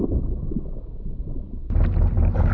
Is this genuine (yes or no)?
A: yes